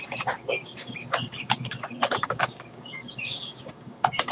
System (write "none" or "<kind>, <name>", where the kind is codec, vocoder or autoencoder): codec, DAC